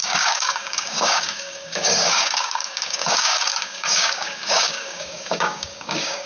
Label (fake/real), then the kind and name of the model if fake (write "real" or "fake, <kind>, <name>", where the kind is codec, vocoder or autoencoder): fake, codec, DAC